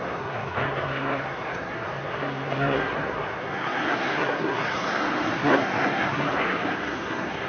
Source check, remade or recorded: remade